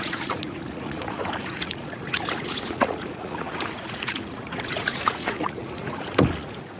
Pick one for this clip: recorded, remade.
remade